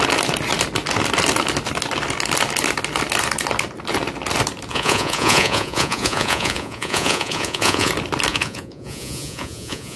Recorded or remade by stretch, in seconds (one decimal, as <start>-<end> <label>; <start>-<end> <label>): 0.0-4.7 recorded; 4.7-7.9 remade; 7.9-8.3 recorded; 8.3-10.0 remade